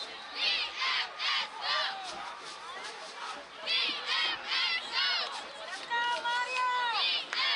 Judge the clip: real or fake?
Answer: real